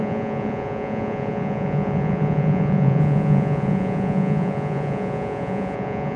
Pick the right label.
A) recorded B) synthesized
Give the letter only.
B